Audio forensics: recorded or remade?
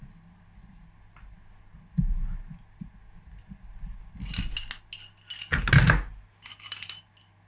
recorded